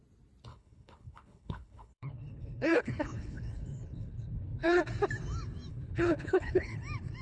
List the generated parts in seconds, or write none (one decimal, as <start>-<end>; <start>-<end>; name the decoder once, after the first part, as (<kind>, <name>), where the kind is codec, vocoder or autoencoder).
0.5-4.8 (codec, HILCodec); 5.7-6.8